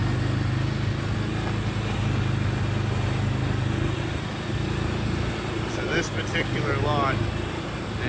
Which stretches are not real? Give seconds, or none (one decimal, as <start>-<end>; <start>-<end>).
none

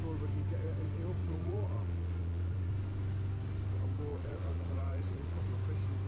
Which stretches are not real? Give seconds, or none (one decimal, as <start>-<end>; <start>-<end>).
1.2-2.7; 4.1-5.4

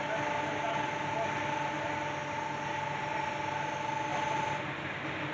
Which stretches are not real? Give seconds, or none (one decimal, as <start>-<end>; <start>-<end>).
none

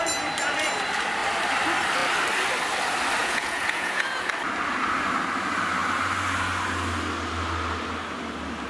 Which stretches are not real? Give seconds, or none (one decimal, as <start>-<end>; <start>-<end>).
3.2-4.3

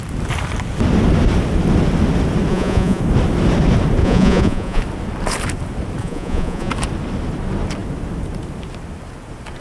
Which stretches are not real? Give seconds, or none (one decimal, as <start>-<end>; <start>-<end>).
2.5-3.0; 4.0-4.8; 6.0-6.7

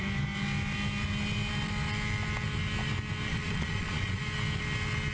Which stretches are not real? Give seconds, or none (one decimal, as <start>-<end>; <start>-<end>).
3.3-4.2